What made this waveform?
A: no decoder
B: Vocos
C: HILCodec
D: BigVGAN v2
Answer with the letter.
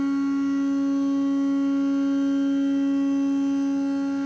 A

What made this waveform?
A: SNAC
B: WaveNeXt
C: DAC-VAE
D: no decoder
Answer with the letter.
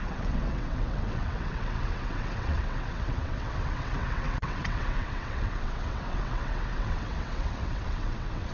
B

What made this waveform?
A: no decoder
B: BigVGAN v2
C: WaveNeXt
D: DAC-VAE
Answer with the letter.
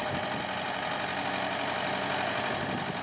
A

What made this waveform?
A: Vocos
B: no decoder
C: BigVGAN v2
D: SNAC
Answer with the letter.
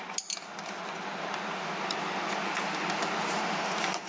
B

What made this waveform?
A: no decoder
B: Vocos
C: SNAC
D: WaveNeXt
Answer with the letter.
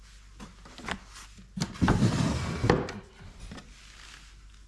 A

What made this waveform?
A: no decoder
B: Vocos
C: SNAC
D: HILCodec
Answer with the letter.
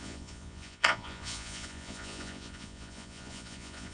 B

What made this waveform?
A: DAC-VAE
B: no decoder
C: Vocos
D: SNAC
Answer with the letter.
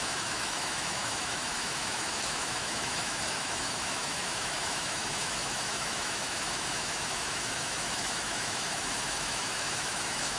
A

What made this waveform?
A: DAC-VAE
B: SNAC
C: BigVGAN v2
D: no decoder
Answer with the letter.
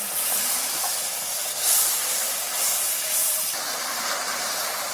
C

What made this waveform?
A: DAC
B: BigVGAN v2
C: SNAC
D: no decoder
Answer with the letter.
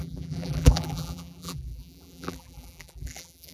B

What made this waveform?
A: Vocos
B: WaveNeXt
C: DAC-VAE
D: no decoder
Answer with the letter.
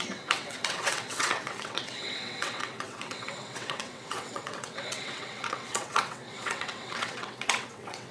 B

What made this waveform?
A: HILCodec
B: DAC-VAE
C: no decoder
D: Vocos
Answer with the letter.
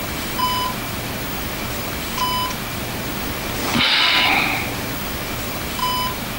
C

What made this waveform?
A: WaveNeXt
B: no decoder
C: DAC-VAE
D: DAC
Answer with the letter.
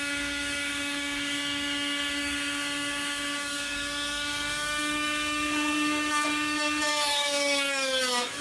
D